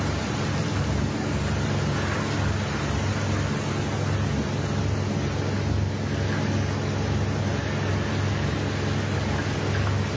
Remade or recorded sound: recorded